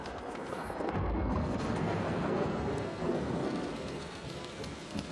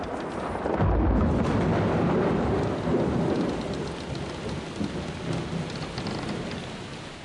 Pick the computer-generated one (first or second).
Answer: first